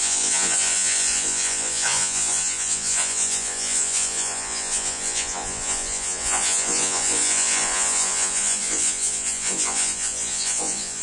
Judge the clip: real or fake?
fake